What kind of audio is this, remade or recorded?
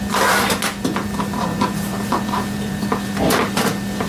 remade